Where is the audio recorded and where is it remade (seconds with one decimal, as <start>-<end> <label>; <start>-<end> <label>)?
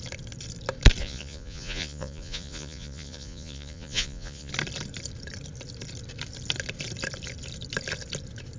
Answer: 0.0-1.0 recorded; 1.0-4.5 remade; 4.5-8.6 recorded